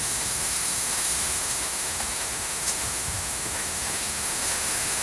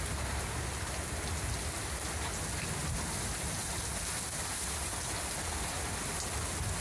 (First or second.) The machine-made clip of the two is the first